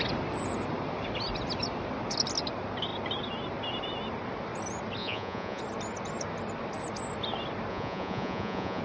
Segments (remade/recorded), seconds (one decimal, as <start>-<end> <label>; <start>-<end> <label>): 0.0-5.0 recorded; 5.0-5.6 remade; 5.6-7.7 recorded; 7.7-8.8 remade